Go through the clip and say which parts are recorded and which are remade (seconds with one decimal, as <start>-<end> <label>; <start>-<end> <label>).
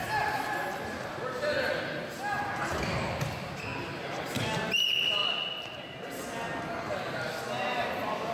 0.0-8.3 recorded